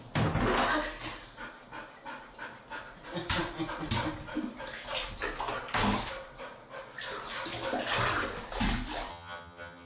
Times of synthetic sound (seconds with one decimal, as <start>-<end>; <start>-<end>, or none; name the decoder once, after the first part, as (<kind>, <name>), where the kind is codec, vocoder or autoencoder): 9.1-9.9 (vocoder, HiFi-GAN)